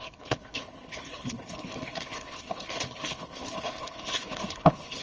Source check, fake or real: fake